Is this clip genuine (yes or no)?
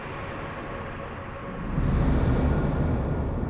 yes